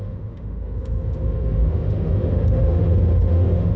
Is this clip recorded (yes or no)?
no